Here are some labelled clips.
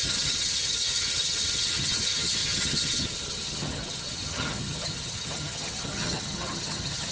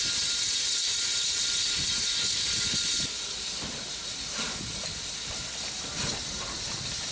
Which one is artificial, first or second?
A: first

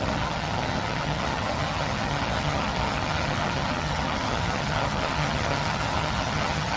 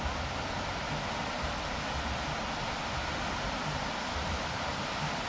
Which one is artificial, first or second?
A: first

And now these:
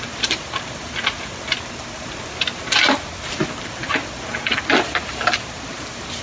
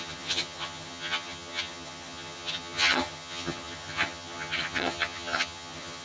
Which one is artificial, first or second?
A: second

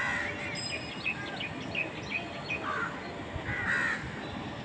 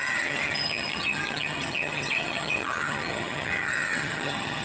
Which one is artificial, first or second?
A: second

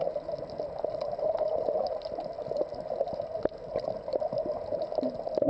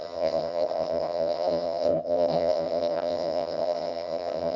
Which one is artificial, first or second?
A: second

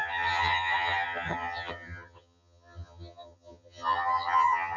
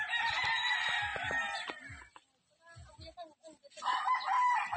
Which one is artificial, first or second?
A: first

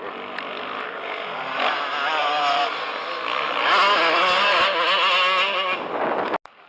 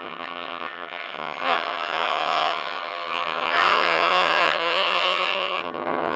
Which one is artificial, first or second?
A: second